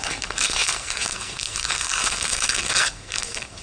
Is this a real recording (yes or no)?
no